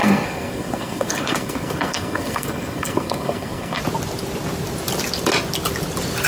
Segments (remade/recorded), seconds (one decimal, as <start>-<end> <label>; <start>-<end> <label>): 0.0-3.8 remade; 3.8-6.3 recorded